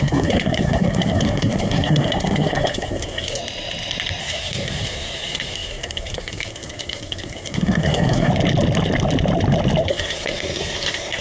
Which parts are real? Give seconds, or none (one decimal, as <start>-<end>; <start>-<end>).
3.4-4.2; 8.3-9.9